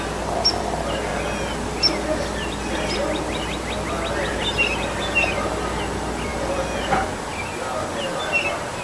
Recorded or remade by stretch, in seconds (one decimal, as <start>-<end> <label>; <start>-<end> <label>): 0.0-8.8 recorded